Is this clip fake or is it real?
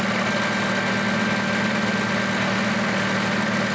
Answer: real